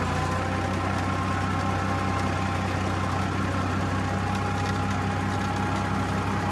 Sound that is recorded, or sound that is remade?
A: recorded